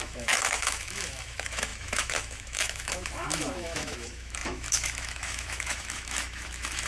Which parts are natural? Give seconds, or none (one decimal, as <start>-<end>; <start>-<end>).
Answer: none